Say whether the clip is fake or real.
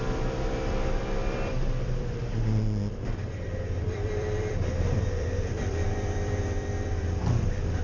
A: fake